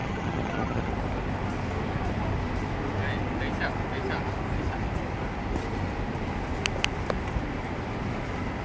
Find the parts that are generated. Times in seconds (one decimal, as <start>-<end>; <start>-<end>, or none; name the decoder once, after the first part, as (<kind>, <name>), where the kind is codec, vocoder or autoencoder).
0.0-0.9 (vocoder, HiFi-GAN)